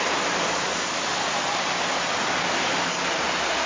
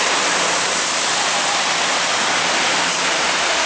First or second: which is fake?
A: second